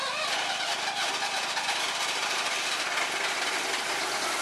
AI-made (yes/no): no